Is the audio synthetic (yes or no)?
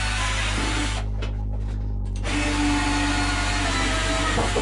no